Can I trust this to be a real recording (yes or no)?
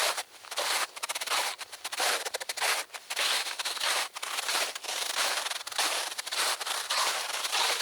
no